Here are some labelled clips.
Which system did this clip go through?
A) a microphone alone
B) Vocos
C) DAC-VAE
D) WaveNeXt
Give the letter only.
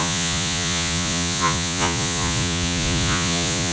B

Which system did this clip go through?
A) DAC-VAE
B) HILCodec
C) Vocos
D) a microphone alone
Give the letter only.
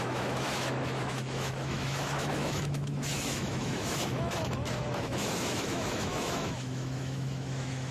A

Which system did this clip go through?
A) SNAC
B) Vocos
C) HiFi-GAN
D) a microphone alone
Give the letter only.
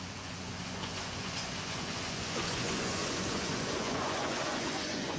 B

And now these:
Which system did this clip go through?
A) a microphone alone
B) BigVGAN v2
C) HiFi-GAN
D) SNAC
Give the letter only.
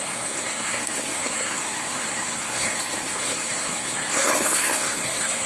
D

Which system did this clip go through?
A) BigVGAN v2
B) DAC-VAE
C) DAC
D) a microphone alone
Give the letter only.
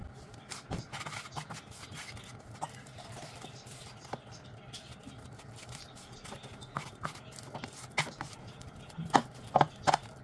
D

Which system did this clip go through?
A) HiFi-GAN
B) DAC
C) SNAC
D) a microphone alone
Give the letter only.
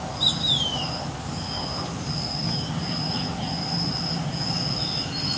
D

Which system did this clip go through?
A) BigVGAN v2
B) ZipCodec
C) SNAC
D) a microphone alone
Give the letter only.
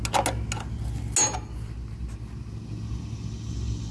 D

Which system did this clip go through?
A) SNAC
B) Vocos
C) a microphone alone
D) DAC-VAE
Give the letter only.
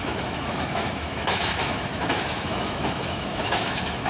D